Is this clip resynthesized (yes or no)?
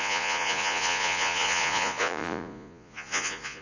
yes